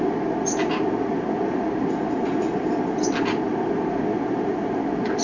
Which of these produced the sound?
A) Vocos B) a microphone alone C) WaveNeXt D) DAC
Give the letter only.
B